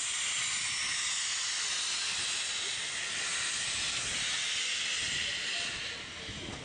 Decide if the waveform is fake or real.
real